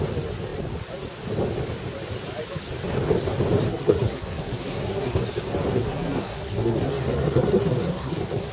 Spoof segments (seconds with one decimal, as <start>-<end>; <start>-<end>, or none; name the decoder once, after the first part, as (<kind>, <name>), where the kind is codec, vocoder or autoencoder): 3.7-5.2 (codec, SNAC); 5.7-8.5